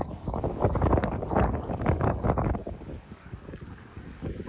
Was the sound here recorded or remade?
remade